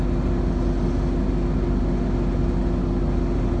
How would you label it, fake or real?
real